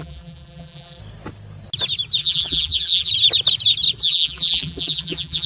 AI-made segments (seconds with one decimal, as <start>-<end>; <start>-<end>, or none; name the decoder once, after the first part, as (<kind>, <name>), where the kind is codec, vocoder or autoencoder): 0.0-1.0 (vocoder, BigVGAN v2); 2.2-3.1; 4.0-5.5